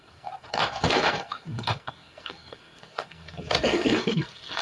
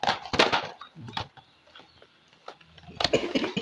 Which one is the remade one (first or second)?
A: first